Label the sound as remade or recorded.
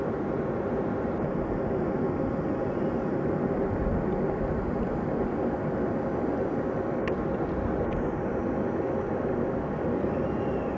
recorded